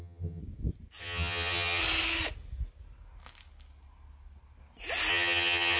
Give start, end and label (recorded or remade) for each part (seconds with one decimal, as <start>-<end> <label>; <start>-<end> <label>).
0.0-0.4 remade; 0.4-1.0 recorded; 1.0-1.8 remade; 1.8-5.1 recorded; 5.1-5.8 remade